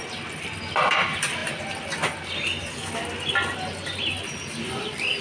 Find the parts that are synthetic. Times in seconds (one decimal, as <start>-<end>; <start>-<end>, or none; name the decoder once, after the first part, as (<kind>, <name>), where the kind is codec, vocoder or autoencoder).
none